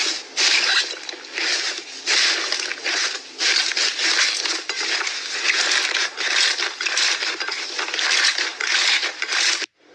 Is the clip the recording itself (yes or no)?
yes